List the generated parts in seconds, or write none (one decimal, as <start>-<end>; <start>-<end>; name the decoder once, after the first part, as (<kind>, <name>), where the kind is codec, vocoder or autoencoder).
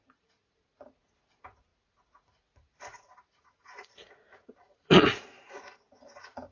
0.0-6.5 (vocoder, Vocos)